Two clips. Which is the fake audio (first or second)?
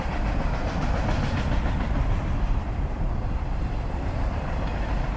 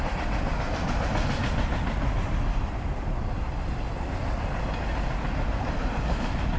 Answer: first